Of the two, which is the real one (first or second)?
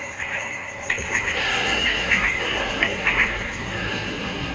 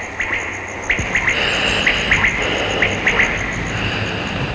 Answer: second